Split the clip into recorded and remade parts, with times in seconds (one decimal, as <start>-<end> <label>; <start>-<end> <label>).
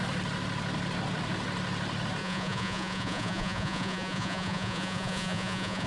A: 0.0-2.2 recorded; 2.2-5.9 remade